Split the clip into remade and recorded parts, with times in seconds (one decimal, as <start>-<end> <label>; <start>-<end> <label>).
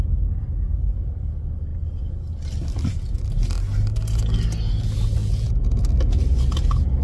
0.0-5.2 recorded; 5.2-5.8 remade; 5.8-7.0 recorded